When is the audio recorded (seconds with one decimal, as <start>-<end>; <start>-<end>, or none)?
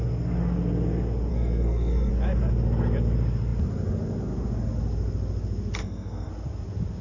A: 0.0-1.3; 2.1-5.8; 6.3-7.0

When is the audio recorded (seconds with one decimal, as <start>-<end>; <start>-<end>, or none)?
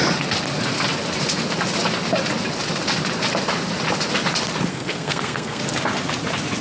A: 0.0-4.7; 5.6-6.6